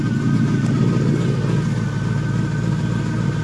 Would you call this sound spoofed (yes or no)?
no